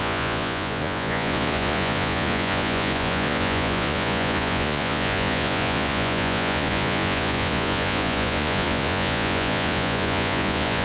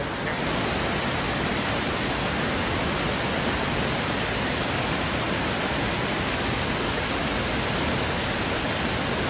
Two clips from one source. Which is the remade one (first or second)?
first